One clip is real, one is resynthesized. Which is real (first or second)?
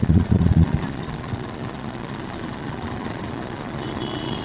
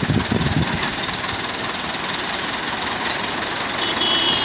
second